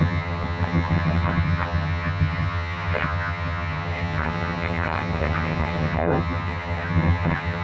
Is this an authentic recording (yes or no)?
no